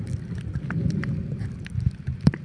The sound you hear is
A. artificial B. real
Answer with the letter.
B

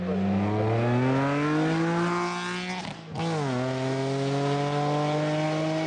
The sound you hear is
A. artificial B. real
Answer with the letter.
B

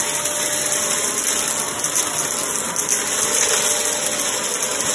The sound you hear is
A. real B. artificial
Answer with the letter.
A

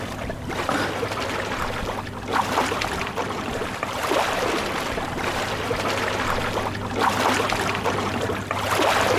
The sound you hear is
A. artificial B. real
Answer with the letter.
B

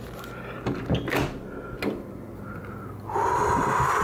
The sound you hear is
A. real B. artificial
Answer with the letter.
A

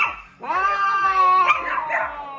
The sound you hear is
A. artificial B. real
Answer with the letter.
B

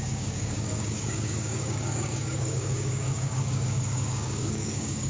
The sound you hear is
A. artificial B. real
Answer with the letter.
A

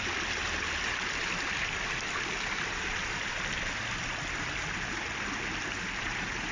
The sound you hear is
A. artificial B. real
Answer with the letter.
B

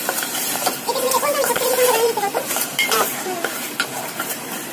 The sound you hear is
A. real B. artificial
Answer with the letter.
B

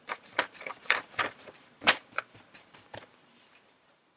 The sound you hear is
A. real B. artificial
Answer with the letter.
B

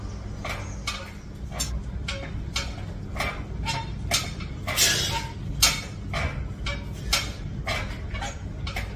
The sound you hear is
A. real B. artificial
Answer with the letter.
A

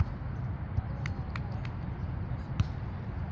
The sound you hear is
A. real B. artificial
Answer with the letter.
A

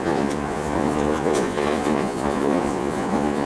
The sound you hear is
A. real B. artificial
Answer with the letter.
B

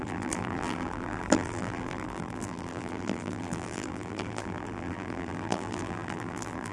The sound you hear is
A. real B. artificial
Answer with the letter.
B